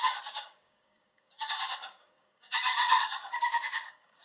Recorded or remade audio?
remade